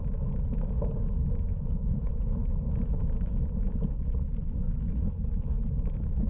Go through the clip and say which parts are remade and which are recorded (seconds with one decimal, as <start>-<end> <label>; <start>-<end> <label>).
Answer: 0.0-1.5 recorded; 1.5-2.1 remade; 2.1-6.3 recorded